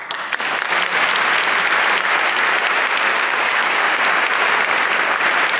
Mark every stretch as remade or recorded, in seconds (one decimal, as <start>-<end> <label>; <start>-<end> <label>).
0.0-3.1 recorded; 3.1-4.0 remade; 4.0-5.6 recorded